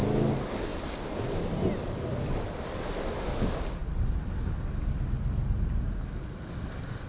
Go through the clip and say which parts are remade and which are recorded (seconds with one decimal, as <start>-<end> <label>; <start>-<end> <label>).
0.0-0.7 recorded; 0.7-2.7 remade; 2.7-7.1 recorded